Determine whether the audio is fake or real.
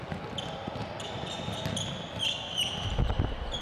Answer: real